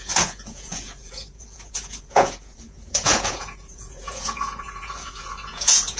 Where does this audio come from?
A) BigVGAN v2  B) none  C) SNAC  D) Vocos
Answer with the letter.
D